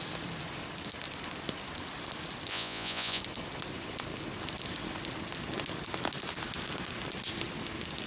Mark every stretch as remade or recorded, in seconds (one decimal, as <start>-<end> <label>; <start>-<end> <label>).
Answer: 0.0-2.5 recorded; 2.5-3.2 remade; 3.2-8.1 recorded